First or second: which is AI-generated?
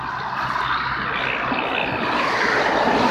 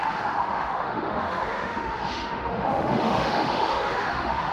second